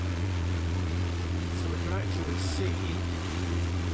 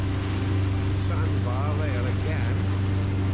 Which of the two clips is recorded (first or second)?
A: second